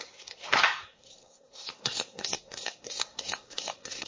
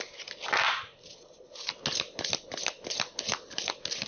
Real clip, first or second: second